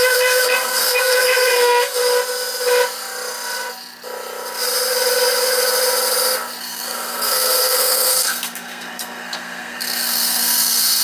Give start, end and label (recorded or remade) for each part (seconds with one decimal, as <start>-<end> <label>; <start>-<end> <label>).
0.0-2.0 remade; 2.0-6.6 recorded; 6.6-11.0 remade